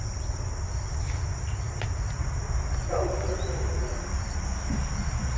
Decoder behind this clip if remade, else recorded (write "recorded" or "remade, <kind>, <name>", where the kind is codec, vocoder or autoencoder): recorded